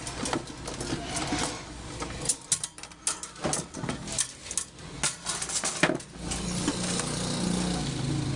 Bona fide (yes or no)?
yes